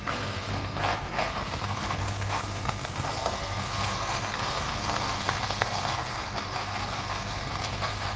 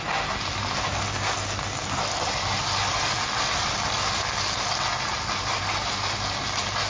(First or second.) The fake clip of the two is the first